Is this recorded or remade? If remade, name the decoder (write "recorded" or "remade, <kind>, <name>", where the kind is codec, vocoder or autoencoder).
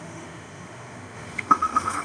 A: remade, autoencoder, DAC-VAE